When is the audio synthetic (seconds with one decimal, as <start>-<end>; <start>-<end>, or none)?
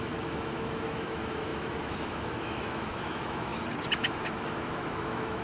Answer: 0.0-5.4